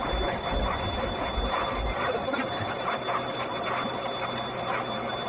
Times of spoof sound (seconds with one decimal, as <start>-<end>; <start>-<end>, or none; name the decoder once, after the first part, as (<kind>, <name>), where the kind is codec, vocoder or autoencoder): none